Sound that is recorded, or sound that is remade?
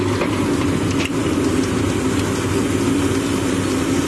recorded